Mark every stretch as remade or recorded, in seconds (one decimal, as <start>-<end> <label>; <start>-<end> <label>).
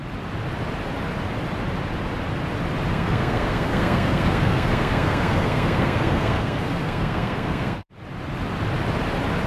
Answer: 0.0-2.9 recorded; 2.9-7.9 remade; 7.9-9.5 recorded